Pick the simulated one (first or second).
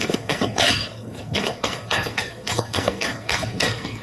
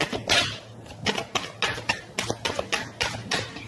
first